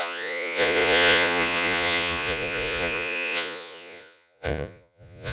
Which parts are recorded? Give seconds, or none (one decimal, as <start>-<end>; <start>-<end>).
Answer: none